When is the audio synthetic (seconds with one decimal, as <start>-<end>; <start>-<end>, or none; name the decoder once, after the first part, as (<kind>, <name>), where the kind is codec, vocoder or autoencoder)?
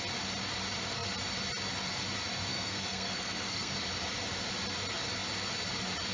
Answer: 2.5-3.7 (codec, SNAC)